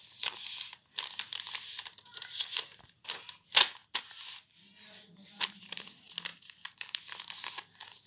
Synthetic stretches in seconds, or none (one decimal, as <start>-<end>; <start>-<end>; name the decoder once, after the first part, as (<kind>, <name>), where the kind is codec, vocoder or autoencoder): 6.3-7.0 (vocoder, BigVGAN v2)